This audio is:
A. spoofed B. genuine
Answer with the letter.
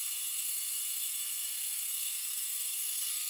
A